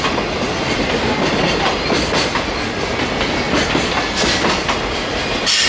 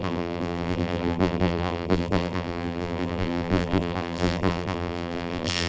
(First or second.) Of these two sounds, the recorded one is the first